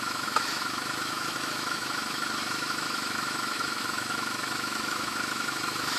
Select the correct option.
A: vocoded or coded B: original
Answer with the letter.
A